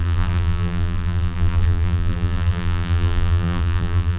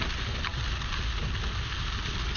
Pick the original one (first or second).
second